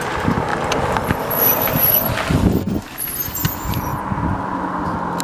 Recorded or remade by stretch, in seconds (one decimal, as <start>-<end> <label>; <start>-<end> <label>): 0.0-0.5 remade; 0.5-2.8 recorded; 2.8-3.9 remade; 3.9-5.2 recorded